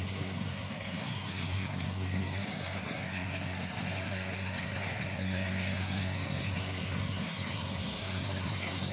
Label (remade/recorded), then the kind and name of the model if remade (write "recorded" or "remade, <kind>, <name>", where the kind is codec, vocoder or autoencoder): remade, codec, SNAC